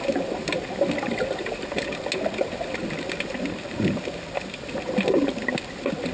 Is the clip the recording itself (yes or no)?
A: yes